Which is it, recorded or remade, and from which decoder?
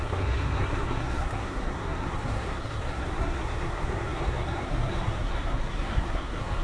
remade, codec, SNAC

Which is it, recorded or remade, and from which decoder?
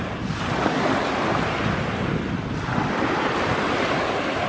recorded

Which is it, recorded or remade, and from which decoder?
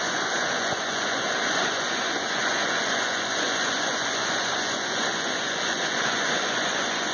remade, vocoder, Vocos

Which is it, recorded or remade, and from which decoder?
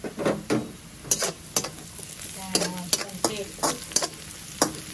recorded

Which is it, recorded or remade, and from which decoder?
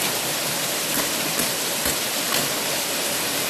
recorded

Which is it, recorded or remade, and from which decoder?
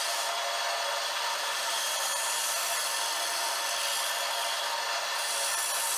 recorded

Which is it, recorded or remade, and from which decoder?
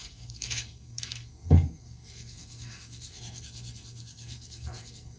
remade, codec, SNAC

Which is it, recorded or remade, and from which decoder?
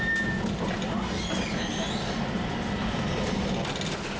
recorded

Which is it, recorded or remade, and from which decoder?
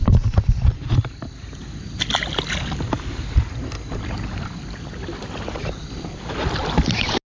recorded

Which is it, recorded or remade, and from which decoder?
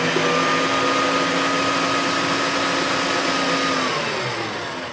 recorded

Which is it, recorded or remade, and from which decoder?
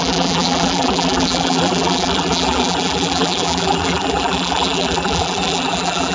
remade, vocoder, BigVGAN v2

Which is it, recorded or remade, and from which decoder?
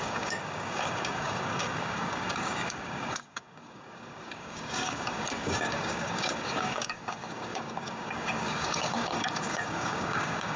remade, codec, DAC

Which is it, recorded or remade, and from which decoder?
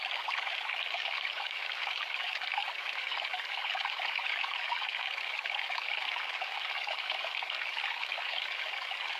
remade, codec, DAC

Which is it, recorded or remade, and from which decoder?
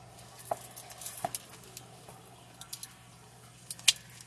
recorded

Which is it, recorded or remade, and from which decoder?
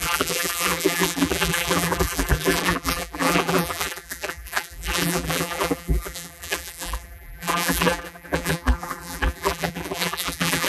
remade, vocoder, BigVGAN v2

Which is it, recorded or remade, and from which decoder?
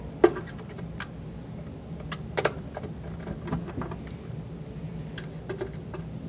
recorded